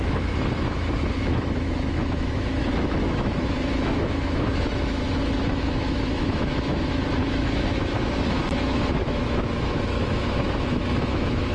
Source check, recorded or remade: remade